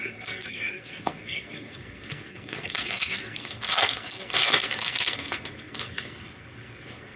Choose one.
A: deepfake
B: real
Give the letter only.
A